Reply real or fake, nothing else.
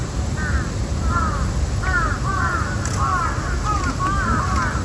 real